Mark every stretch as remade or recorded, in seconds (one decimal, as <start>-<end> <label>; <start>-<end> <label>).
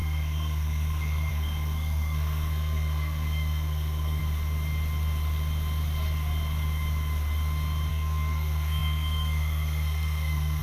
0.0-4.2 remade; 4.2-7.9 recorded; 7.9-10.6 remade